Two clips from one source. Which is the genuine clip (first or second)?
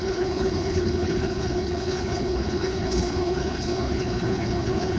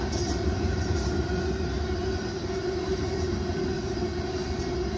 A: second